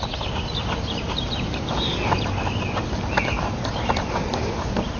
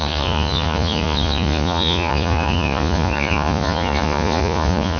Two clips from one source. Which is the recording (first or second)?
first